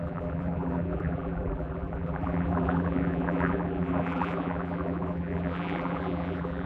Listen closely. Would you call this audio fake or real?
fake